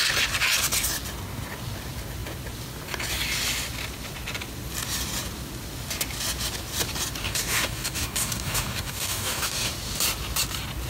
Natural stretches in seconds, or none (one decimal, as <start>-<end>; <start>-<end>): 0.0-7.2; 9.7-10.9